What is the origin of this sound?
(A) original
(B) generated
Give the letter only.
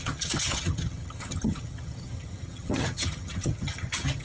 B